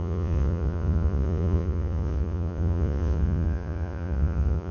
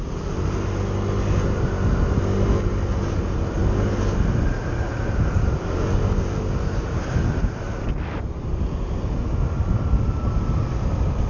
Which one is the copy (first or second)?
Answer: first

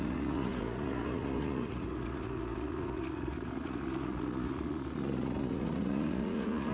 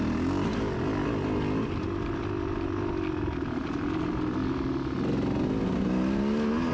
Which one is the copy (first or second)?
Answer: first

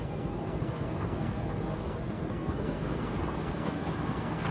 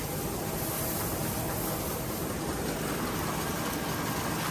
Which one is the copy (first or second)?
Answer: first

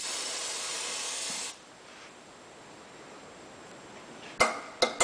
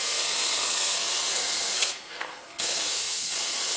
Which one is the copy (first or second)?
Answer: second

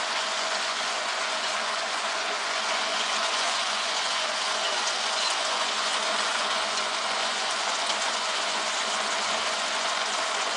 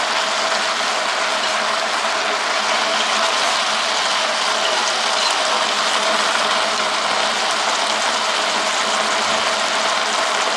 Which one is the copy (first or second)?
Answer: first